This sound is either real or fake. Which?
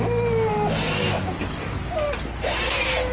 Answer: real